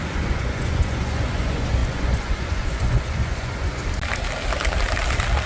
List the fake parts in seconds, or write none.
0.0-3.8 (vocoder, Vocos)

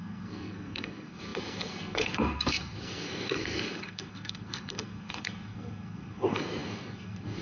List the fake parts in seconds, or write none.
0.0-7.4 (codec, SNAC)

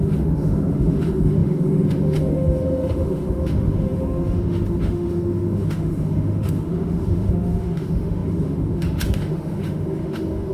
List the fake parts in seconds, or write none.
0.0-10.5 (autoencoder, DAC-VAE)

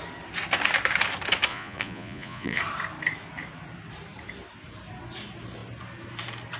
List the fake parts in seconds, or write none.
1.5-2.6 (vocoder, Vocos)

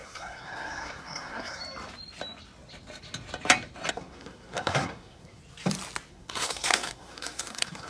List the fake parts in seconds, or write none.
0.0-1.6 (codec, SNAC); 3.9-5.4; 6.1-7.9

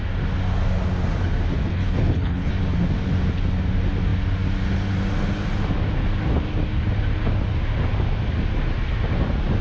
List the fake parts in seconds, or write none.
1.7-2.5 (codec, HILCodec)

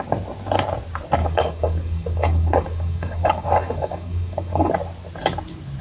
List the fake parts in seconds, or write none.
1.2-4.7 (codec, DAC)

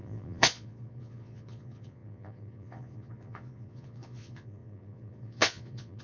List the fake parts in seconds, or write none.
0.0-6.0 (vocoder, Vocos)